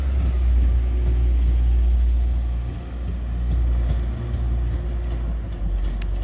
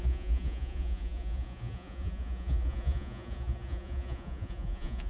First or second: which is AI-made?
second